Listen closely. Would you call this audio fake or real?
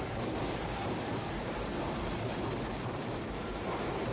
real